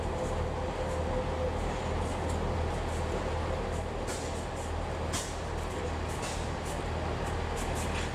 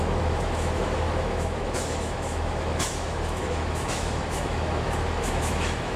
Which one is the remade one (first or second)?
second